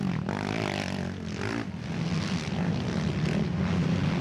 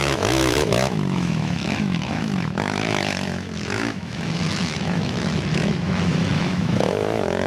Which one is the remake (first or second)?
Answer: second